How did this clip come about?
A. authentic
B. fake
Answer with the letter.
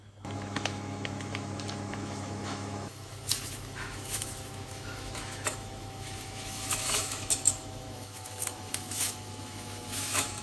B